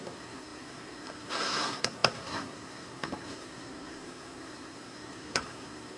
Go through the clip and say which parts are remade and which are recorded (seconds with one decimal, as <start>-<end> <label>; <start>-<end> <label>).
0.0-6.0 remade